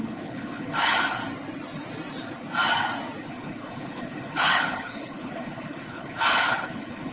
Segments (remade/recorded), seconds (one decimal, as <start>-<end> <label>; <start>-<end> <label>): 0.0-1.2 remade; 1.2-3.2 recorded; 3.2-7.1 remade